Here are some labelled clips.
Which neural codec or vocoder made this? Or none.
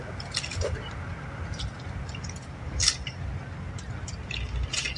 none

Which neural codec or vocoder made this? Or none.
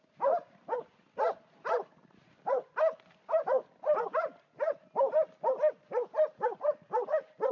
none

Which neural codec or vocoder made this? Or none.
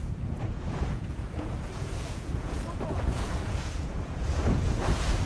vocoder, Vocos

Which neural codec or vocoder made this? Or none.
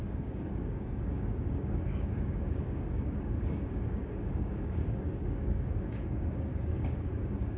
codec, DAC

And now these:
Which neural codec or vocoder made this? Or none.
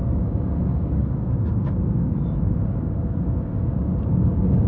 codec, DAC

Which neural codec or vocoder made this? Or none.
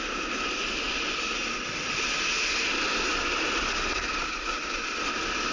none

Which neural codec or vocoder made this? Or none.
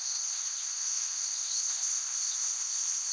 codec, ZipCodec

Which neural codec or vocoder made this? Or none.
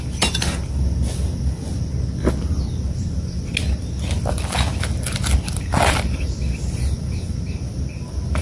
none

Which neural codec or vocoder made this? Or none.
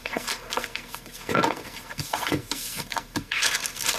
codec, SNAC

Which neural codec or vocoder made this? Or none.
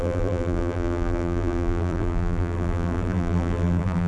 vocoder, BigVGAN v2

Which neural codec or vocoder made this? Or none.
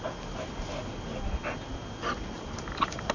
none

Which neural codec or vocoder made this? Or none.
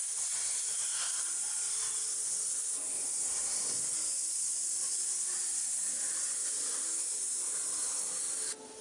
none